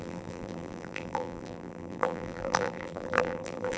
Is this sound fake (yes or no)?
yes